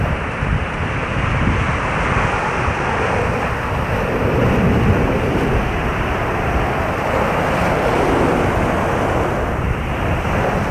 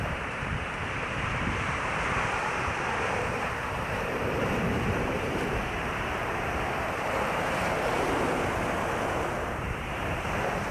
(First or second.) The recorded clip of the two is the first